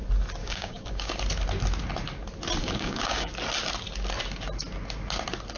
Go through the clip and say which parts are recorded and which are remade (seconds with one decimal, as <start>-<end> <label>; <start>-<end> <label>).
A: 0.0-0.4 recorded; 0.4-1.1 remade; 1.1-2.6 recorded; 2.6-3.3 remade; 3.3-5.6 recorded